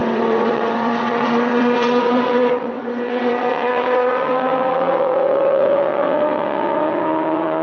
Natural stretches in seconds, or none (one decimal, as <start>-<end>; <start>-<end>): none